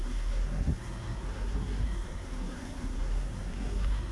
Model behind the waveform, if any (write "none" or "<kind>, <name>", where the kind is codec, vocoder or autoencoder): codec, SNAC